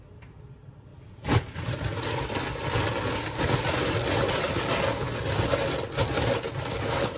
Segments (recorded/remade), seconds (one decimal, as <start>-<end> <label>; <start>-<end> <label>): 0.0-7.2 recorded